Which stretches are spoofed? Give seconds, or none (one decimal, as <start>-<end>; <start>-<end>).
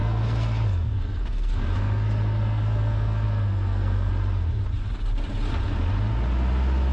0.0-4.1